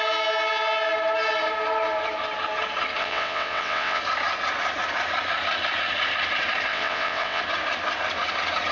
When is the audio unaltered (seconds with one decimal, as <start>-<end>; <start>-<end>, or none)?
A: 0.0-3.0; 4.0-6.7; 7.4-8.7